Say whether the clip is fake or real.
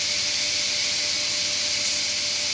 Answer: real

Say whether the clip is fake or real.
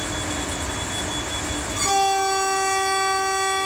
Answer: real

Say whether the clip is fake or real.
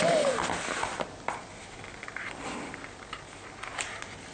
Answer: real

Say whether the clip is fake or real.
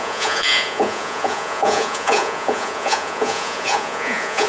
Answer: fake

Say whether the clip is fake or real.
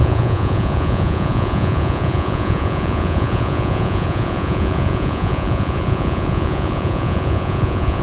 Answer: fake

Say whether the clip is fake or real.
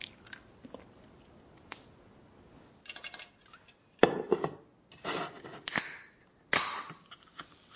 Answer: real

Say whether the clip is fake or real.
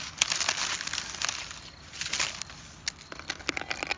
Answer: real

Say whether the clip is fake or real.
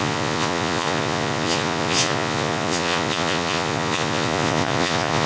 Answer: fake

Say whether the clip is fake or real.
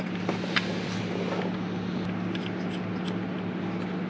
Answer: real